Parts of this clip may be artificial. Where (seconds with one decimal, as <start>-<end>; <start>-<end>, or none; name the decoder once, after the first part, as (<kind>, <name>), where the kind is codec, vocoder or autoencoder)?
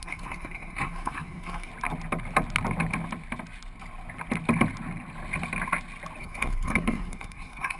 0.0-1.7 (codec, SNAC); 6.2-7.8